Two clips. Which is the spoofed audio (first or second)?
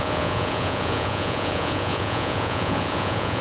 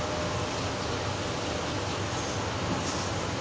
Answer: first